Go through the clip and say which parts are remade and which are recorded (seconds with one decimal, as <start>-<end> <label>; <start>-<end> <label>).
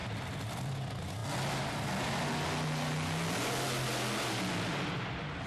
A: 0.0-5.5 recorded